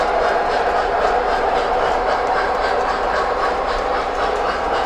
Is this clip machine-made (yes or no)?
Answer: yes